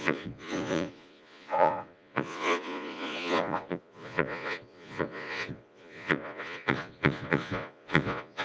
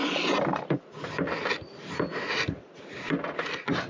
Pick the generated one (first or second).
first